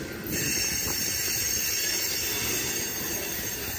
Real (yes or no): no